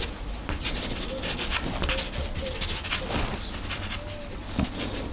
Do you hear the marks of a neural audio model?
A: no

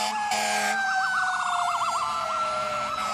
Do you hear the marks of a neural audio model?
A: yes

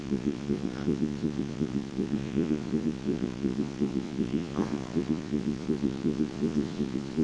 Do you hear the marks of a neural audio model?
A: yes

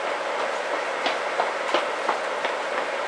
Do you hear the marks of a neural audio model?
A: no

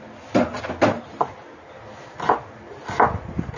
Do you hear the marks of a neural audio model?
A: no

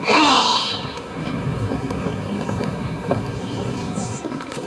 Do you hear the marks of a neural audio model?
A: yes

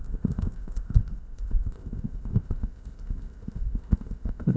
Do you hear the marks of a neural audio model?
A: yes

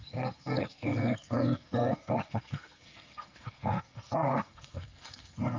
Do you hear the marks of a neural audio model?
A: yes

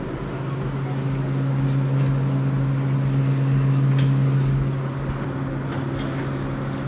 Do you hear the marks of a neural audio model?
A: no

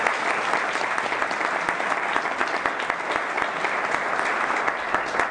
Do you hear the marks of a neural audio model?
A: no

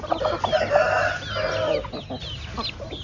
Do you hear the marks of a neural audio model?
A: no